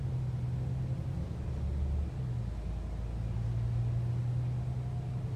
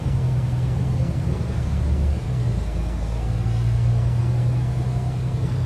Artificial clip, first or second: second